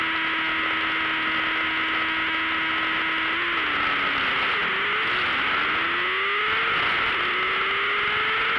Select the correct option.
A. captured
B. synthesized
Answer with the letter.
A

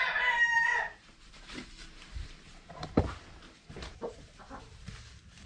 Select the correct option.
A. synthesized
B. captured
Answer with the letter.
A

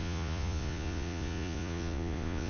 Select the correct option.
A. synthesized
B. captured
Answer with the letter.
A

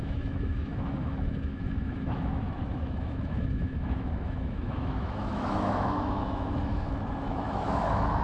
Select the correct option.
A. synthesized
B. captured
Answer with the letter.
A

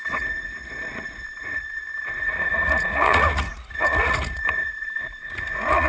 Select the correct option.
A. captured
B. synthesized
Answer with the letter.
B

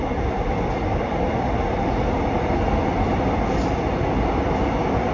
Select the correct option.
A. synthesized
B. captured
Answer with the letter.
B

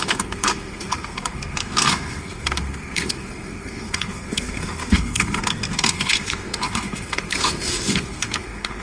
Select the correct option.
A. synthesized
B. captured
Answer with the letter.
A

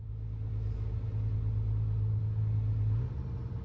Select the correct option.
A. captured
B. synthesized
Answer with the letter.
A